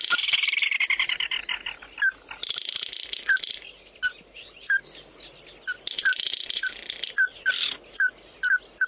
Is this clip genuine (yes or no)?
yes